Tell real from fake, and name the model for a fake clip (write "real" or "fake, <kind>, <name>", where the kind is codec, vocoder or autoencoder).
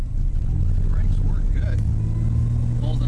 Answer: real